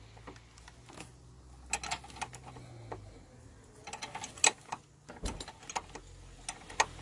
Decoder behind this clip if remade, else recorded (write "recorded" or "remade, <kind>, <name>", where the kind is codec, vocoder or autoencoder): recorded